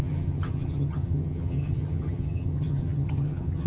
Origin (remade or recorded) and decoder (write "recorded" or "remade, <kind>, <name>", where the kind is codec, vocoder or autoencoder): remade, vocoder, HiFi-GAN